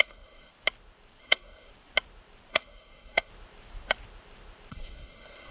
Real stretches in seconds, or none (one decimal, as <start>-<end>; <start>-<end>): 0.5-1.2; 1.7-2.5; 3.3-4.7